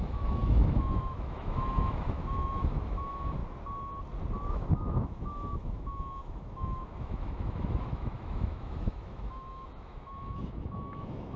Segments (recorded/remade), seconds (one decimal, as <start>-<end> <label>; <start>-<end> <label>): 0.0-3.4 remade; 3.4-4.5 recorded; 4.5-11.4 remade